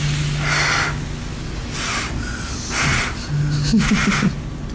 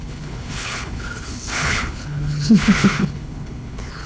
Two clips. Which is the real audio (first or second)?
first